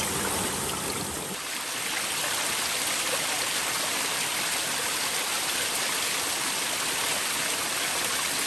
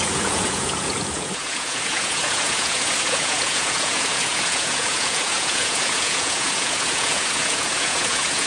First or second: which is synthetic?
second